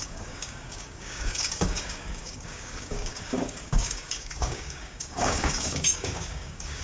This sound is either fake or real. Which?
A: fake